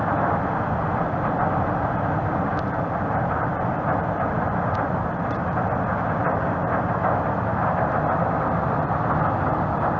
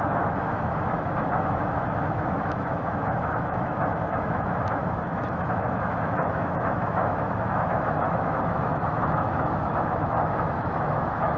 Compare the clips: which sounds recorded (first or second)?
first